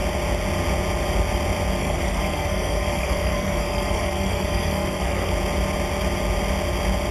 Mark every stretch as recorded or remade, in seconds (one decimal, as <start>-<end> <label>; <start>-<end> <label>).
0.0-1.8 recorded; 1.8-5.3 remade; 5.3-7.1 recorded